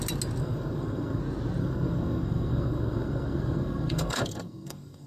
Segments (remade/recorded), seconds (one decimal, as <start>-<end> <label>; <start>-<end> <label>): 0.0-0.4 recorded; 0.4-1.2 remade; 1.2-1.6 recorded; 1.6-5.1 remade